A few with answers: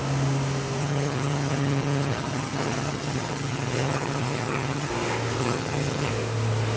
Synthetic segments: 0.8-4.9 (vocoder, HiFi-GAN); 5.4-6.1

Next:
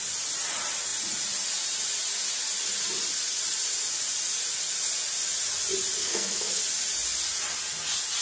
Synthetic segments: 6.0-6.6 (codec, SNAC)

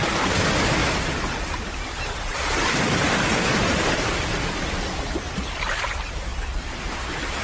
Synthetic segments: 0.8-1.7 (vocoder, BigVGAN v2); 2.3-5.8; 6.3-7.4